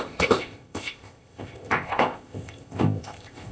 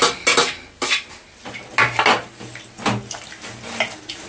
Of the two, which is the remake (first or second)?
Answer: first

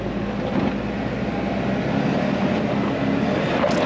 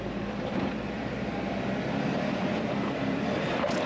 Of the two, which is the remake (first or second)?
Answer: second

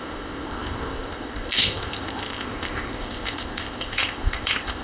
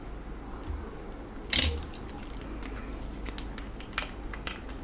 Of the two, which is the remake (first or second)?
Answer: first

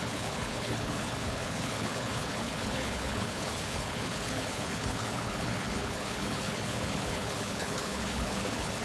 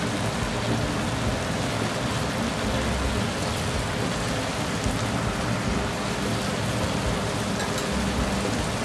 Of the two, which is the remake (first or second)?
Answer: first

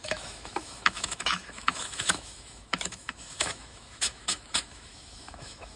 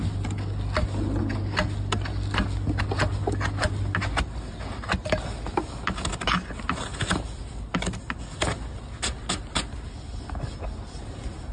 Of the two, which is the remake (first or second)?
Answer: first